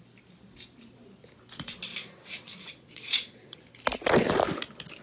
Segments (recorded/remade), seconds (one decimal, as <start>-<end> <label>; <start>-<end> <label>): 0.0-1.9 recorded; 1.9-3.6 remade; 3.6-5.0 recorded